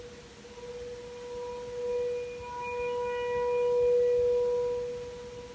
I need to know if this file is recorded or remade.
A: recorded